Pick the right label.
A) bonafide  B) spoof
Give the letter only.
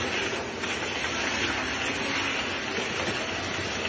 A